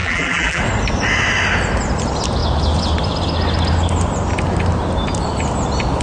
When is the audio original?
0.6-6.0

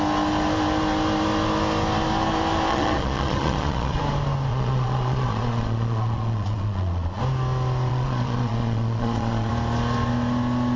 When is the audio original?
0.0-2.7; 4.0-4.5; 7.2-7.9; 9.5-10.8

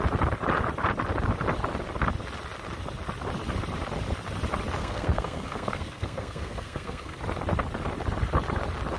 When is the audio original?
0.0-4.8; 7.2-9.0

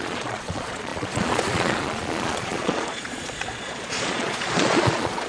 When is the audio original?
none

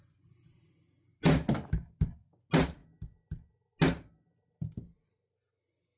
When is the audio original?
0.0-6.0

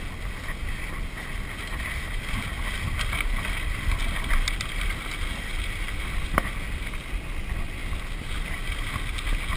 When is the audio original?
0.0-9.6